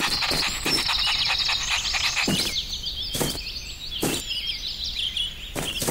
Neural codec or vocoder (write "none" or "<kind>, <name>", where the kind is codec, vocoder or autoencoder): none